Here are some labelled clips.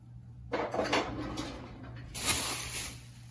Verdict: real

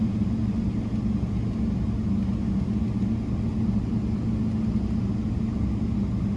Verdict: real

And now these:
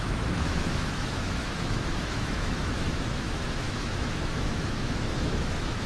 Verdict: fake